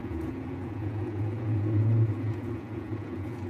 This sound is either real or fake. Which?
fake